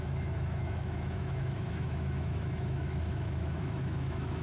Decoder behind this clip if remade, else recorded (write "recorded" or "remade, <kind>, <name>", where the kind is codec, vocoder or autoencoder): remade, autoencoder, DAC-VAE